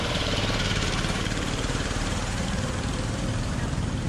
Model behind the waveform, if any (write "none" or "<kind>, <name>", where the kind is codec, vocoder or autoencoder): vocoder, BigVGAN v2